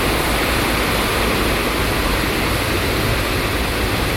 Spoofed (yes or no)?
no